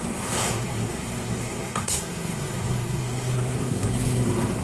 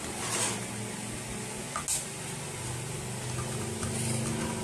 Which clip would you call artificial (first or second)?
first